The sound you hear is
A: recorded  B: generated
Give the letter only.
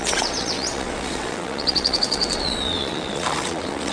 B